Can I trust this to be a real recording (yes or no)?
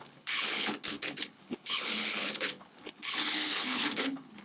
no